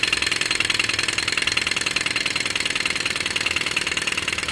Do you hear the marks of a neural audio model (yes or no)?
no